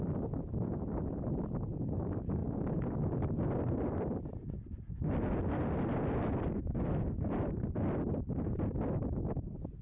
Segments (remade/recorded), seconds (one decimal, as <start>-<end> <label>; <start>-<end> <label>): 0.0-9.8 recorded